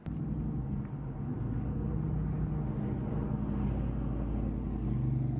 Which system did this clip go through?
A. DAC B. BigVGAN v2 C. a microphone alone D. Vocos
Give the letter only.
C